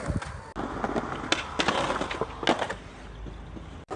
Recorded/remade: recorded